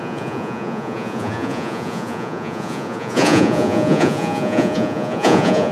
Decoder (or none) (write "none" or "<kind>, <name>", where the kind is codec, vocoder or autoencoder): vocoder, Vocos